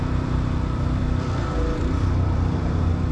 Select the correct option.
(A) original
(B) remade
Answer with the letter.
B